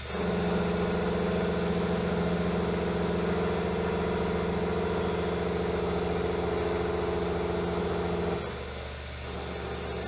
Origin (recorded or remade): recorded